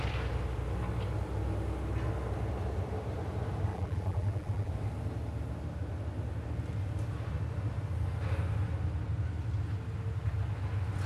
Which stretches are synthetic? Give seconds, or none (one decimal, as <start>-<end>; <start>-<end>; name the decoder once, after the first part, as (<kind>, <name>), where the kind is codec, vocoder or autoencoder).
3.7-4.7 (vocoder, BigVGAN v2)